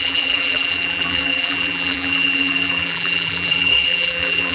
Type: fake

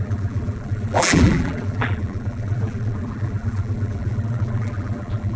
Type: fake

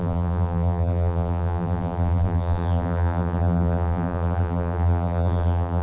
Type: fake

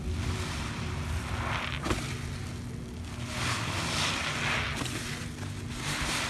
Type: real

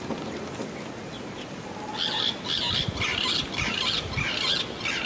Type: real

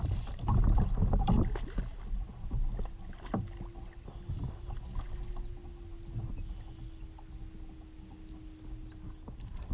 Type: real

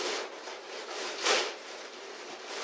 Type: fake